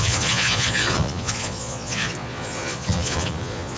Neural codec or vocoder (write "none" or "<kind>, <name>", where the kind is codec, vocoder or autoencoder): vocoder, Vocos